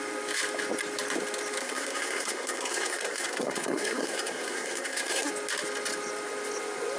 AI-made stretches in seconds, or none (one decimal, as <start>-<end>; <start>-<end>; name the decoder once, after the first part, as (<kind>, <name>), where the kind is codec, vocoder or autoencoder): 1.6-5.3 (codec, SNAC)